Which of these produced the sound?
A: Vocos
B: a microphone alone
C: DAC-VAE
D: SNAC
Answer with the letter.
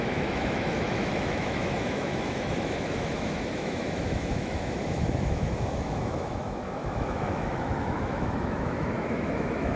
C